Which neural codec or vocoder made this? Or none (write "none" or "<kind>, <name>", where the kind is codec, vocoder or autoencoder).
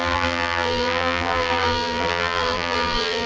vocoder, BigVGAN v2